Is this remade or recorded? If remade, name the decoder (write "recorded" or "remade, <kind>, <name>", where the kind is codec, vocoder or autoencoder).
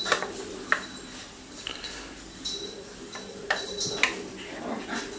recorded